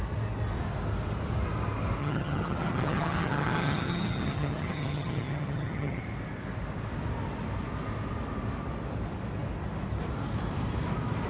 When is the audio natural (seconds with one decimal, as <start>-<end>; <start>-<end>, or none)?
0.0-2.0; 6.0-11.3